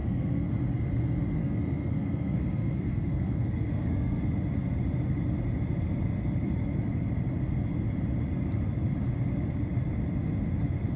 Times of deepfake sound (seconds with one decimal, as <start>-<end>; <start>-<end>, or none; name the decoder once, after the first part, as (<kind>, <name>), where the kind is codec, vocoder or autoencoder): 0.0-0.5 (codec, SNAC); 1.4-4.2